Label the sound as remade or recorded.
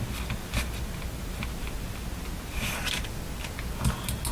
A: recorded